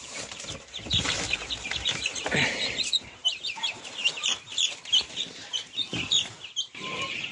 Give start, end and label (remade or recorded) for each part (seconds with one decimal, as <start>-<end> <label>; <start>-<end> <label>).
0.0-7.3 remade